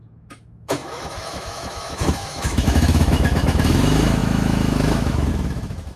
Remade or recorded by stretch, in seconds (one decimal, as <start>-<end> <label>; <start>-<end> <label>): 0.0-6.0 remade